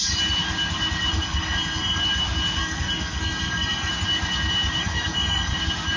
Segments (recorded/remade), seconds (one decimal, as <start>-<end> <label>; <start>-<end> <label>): 0.0-1.1 recorded; 1.1-2.0 remade; 2.0-2.6 recorded; 2.6-3.9 remade; 3.9-4.8 recorded; 4.8-5.6 remade; 5.6-6.0 recorded